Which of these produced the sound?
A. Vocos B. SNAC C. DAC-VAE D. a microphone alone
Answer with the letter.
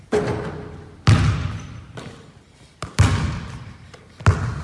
D